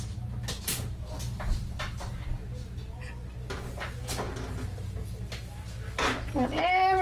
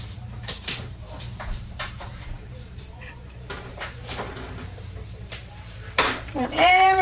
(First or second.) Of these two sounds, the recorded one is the first